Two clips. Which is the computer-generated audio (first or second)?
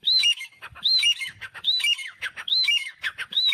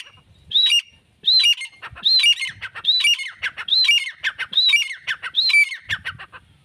first